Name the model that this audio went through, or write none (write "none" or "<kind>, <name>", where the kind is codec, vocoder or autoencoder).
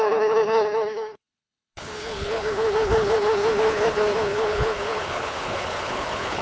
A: codec, HILCodec